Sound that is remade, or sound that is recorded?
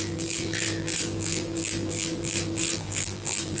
remade